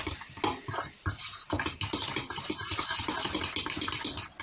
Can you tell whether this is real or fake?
real